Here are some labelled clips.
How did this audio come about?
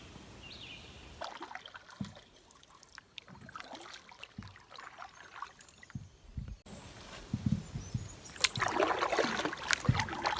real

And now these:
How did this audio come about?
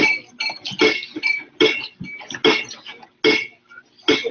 real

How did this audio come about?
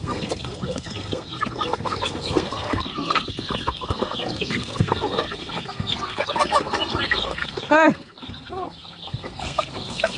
fake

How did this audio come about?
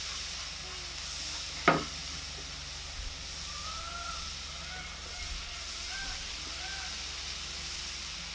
real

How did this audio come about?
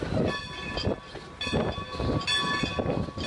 real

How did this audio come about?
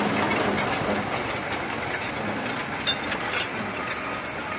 real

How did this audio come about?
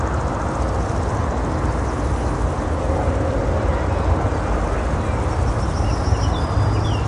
real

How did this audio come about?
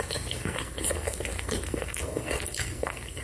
fake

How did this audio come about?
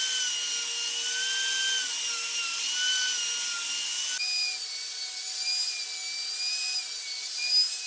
real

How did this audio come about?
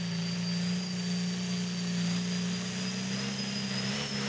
real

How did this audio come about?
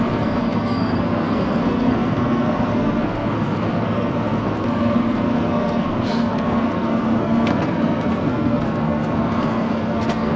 fake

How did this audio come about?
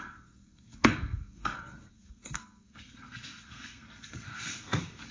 fake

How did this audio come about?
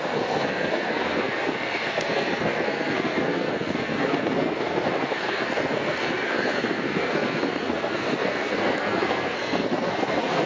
fake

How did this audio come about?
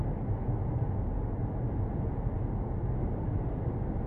real